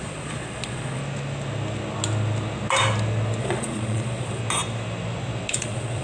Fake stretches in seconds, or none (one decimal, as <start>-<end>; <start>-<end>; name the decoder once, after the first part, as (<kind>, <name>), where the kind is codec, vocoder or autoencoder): 0.0-1.0 (vocoder, Vocos); 3.4-4.4; 5.5-6.0